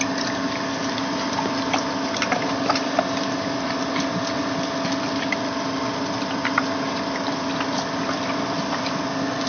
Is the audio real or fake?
real